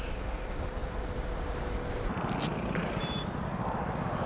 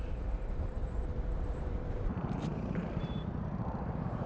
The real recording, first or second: first